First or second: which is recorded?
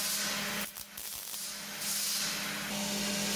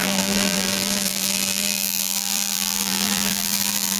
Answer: first